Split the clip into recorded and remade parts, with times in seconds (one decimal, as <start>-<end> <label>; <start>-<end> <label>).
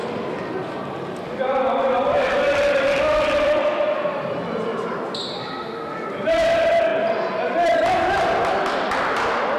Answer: 0.0-9.6 recorded